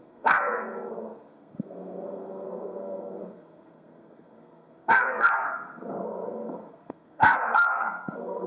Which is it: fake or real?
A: fake